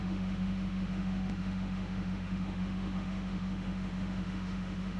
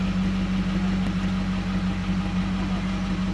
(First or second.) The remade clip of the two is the first